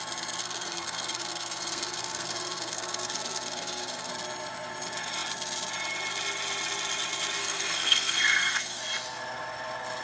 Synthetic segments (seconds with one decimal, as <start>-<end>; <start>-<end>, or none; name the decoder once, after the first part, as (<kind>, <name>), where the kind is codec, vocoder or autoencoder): 0.4-4.1 (codec, SNAC); 7.4-8.8